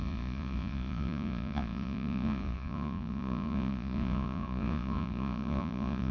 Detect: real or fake fake